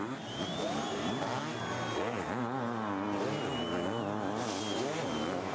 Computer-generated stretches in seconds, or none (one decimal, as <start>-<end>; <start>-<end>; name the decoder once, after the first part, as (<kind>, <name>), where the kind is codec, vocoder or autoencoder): 0.0-1.3 (vocoder, BigVGAN v2); 4.6-5.5